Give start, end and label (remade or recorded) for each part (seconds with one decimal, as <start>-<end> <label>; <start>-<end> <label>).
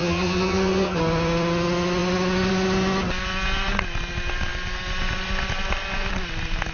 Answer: 0.0-1.0 remade; 1.0-6.7 recorded